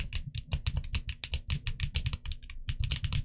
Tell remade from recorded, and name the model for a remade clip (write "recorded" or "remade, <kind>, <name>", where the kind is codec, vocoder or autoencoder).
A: recorded